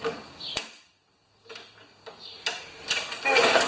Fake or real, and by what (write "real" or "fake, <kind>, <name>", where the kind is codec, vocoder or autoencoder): real